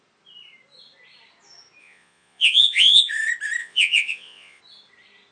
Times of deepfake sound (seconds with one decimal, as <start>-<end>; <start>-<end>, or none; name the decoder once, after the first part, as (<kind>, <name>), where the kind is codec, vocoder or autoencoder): 1.8-3.1 (vocoder, Vocos); 3.6-4.6